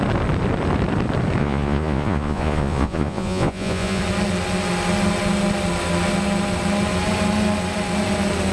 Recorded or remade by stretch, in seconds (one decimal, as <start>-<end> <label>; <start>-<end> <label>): 0.0-1.4 recorded; 1.4-4.0 remade; 4.0-8.5 recorded